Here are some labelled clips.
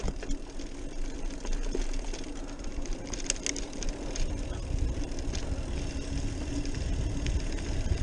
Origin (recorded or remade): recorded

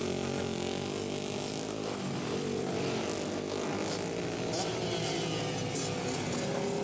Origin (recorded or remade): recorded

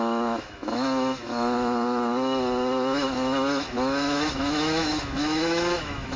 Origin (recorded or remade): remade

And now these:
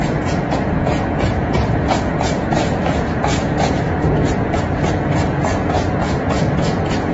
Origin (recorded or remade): remade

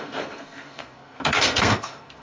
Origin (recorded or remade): remade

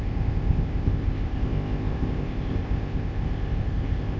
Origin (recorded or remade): remade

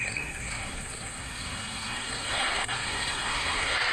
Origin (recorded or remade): remade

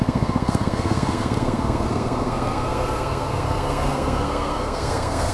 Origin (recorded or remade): remade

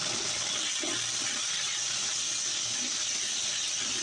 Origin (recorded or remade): recorded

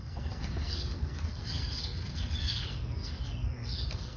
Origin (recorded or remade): remade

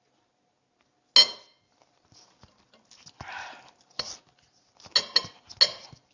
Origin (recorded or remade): recorded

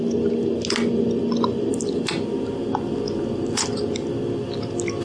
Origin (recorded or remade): recorded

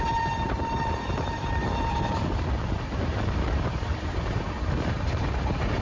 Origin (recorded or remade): remade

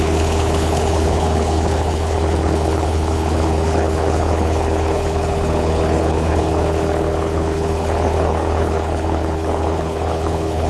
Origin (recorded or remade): remade